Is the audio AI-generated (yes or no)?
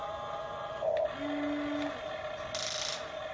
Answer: no